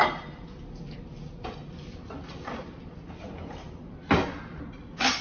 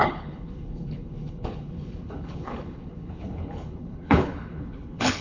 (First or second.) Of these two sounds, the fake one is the second